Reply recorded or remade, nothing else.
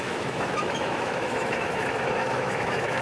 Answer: remade